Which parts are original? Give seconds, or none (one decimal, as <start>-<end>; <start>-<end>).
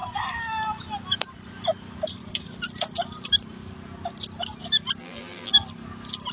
0.0-5.0; 5.5-6.3